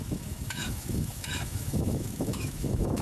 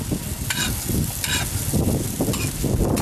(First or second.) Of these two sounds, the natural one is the second